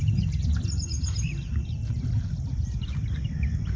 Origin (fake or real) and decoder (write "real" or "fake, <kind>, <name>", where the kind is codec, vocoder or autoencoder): fake, vocoder, BigVGAN v2